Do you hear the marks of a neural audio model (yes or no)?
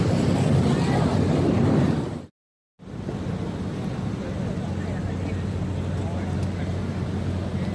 no